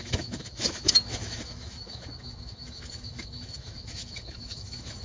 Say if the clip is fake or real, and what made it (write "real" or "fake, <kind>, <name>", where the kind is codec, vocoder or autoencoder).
fake, autoencoder, DAC-VAE